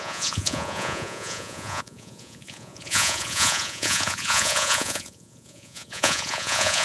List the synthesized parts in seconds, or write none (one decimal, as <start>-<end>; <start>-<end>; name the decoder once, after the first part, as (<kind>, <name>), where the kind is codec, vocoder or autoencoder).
0.0-6.8 (vocoder, Vocos)